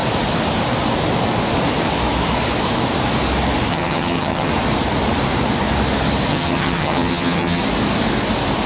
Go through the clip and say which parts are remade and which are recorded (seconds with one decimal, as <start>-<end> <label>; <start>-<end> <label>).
0.0-3.7 recorded; 3.7-4.5 remade; 4.5-6.3 recorded; 6.3-7.6 remade; 7.6-8.7 recorded